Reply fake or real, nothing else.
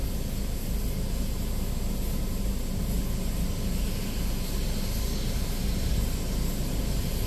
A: real